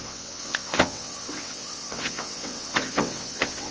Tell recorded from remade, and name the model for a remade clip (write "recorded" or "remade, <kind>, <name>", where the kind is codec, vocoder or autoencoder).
remade, vocoder, WaveNeXt